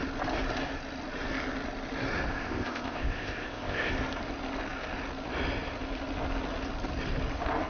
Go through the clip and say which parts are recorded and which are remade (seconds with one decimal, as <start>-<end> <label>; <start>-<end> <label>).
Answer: 0.0-2.3 recorded; 2.3-3.9 remade; 3.9-7.7 recorded